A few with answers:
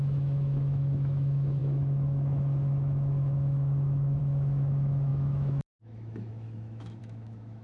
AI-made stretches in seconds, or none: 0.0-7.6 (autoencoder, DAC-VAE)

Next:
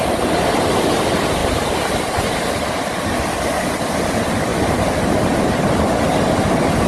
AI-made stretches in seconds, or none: 1.4-2.1 (vocoder, BigVGAN v2); 4.5-5.7

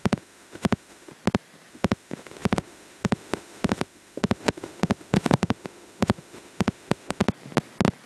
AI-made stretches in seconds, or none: 0.0-1.1 (autoencoder, DAC-VAE); 1.7-7.2

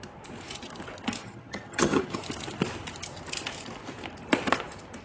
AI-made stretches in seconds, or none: 1.2-2.2 (vocoder, HiFi-GAN)

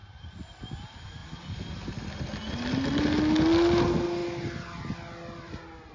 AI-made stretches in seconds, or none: none